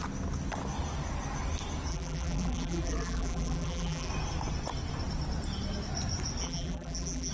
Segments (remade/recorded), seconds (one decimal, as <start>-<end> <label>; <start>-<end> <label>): 0.0-1.9 recorded; 1.9-4.1 remade; 4.1-6.4 recorded; 6.4-7.3 remade